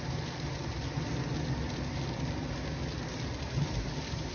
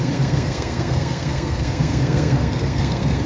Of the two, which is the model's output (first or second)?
second